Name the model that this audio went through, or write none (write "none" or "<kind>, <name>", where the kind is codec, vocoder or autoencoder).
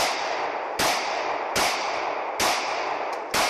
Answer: none